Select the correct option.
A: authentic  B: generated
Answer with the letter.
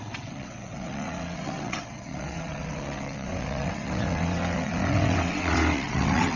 B